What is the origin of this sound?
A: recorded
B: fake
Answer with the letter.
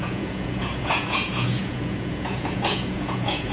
B